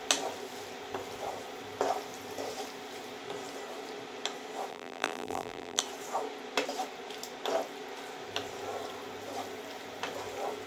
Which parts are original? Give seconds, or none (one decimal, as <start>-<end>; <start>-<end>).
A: 0.0-4.7; 5.8-10.7